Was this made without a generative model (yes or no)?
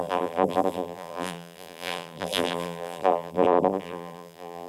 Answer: no